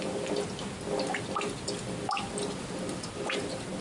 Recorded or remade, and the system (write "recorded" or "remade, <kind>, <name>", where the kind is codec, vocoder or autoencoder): recorded